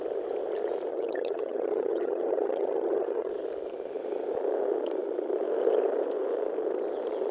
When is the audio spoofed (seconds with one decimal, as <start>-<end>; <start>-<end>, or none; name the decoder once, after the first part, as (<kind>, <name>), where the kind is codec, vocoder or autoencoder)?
0.9-3.3 (vocoder, HiFi-GAN)